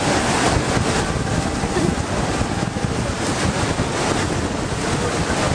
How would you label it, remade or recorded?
recorded